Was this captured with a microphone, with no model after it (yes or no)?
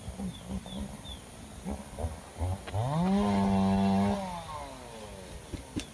yes